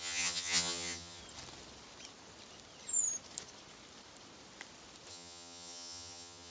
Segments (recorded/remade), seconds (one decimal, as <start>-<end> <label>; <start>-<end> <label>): 0.0-1.2 remade; 1.2-5.1 recorded; 5.1-6.5 remade